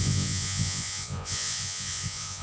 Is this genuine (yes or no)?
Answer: no